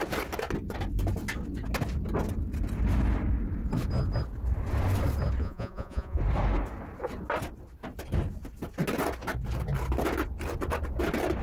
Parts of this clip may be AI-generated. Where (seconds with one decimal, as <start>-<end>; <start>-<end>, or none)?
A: 5.4-6.2